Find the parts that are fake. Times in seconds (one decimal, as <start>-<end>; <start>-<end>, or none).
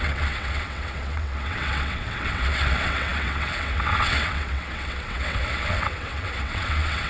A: 0.0-7.1